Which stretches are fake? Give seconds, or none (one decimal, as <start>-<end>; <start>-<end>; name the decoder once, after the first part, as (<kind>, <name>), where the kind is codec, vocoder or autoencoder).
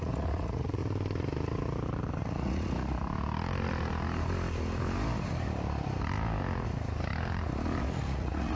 0.0-0.8 (vocoder, Vocos); 2.2-3.0; 7.8-8.6